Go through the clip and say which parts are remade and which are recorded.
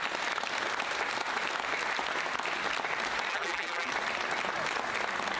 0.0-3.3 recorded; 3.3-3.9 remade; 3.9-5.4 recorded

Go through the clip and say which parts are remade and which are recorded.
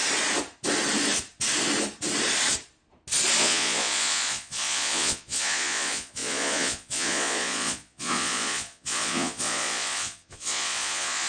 0.0-3.4 recorded; 3.4-11.3 remade